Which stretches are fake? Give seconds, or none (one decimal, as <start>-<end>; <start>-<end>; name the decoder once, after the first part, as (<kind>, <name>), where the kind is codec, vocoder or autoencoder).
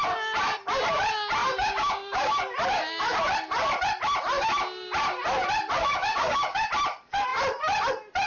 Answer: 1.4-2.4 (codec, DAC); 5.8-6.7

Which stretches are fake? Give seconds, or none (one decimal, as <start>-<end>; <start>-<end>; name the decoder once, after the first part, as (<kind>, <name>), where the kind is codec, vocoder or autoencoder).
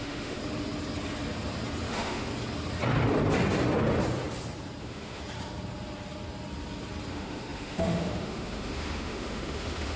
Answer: 0.0-0.4 (autoencoder, DAC-VAE); 1.9-2.3; 4.8-5.2; 7.1-10.0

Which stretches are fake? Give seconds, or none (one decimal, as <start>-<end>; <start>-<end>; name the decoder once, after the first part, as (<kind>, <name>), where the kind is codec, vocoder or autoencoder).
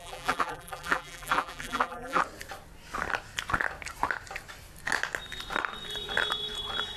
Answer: 0.0-2.2 (vocoder, BigVGAN v2)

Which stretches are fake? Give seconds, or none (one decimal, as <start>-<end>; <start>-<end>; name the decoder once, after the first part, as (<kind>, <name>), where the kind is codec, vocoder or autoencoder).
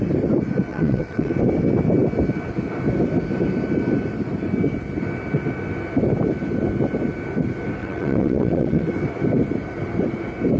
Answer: 0.7-1.3 (vocoder, WaveNeXt); 7.8-8.9